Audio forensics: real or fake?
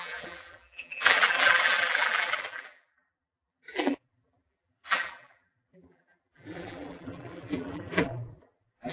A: fake